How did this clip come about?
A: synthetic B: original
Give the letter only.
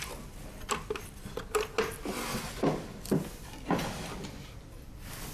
B